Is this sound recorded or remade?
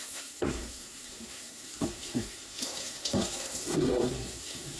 remade